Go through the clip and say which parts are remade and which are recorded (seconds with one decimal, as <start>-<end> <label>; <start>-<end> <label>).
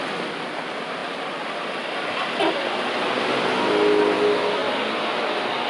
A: 0.0-5.7 recorded